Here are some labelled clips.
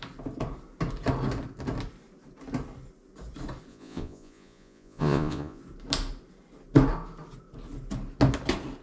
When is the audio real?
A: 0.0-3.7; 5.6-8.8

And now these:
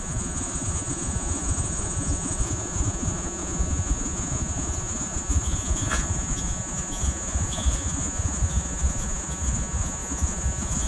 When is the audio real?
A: none

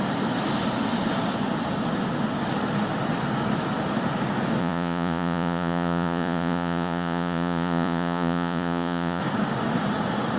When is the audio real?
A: 0.0-4.6; 9.2-10.4

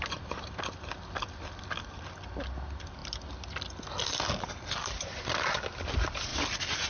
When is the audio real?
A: 0.0-6.9

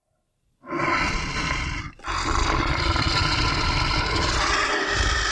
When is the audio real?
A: 0.0-5.3

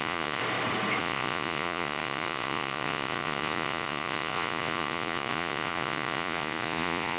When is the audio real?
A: 0.4-1.0